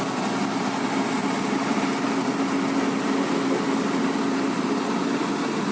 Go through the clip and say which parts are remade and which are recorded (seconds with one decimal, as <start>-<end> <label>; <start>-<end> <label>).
0.0-5.7 recorded